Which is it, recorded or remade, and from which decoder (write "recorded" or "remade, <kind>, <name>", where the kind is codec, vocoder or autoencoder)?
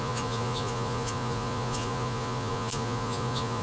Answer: remade, vocoder, Vocos